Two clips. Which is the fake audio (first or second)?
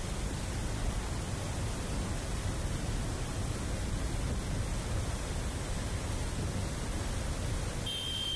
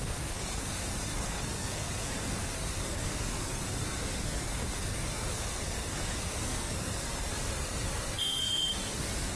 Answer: second